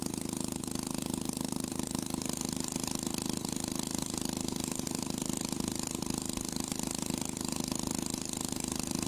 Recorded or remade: recorded